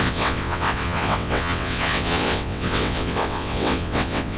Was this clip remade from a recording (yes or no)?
yes